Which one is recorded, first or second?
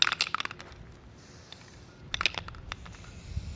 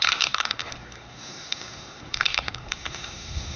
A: first